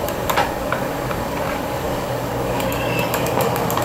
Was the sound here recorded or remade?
remade